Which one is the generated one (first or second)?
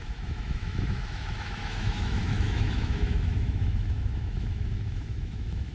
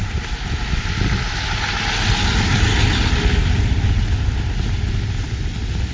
first